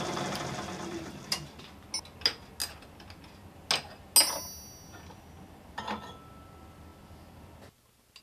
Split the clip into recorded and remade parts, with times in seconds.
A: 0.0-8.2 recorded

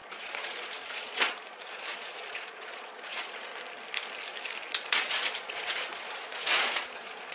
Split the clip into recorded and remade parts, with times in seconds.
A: 0.0-3.5 remade; 3.5-4.7 recorded; 4.7-7.3 remade

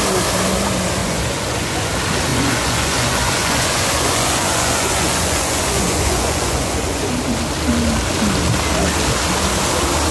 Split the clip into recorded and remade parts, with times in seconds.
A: 0.0-1.0 recorded; 1.0-1.9 remade; 1.9-2.3 recorded; 2.3-7.1 remade; 7.1-10.1 recorded